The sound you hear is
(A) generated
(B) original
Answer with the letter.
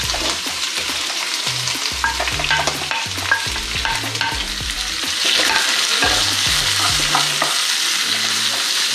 B